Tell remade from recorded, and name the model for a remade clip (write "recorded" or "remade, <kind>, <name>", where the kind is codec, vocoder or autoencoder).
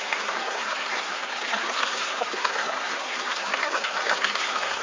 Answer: remade, codec, SNAC